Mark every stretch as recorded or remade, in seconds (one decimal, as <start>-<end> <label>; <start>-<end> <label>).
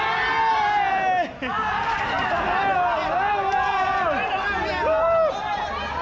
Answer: 0.0-6.0 recorded